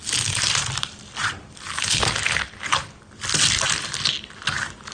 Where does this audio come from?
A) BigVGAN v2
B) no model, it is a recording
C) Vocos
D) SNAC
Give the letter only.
B